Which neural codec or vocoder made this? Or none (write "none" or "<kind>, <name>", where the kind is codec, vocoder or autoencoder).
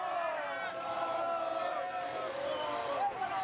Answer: vocoder, BigVGAN v2